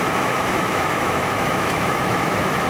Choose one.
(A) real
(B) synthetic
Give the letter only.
B